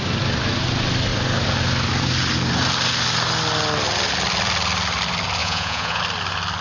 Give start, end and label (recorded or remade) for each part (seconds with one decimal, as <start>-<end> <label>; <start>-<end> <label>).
0.0-5.4 recorded; 5.4-6.0 remade; 6.0-6.6 recorded